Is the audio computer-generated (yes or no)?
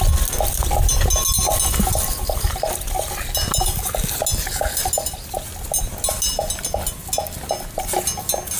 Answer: no